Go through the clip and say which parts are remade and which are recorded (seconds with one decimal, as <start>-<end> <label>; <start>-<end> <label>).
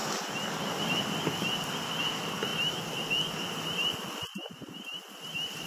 0.0-4.3 recorded; 4.3-5.7 remade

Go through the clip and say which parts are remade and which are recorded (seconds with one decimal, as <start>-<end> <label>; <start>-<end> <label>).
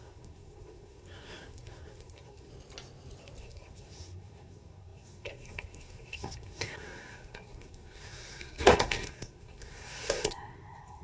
0.0-2.5 remade; 2.5-3.4 recorded; 3.4-11.0 remade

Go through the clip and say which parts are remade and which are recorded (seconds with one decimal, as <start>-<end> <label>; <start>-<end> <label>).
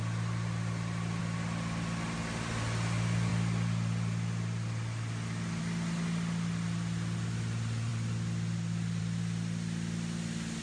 0.0-10.6 recorded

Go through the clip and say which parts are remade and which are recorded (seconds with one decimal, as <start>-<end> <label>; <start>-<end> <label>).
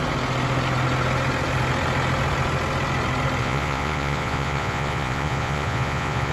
0.0-3.4 recorded; 3.4-6.3 remade